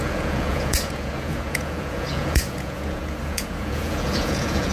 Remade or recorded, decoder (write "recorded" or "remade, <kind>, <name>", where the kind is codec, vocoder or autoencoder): remade, vocoder, Vocos